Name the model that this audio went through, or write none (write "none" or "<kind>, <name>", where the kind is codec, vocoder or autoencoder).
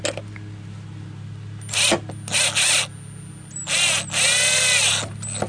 none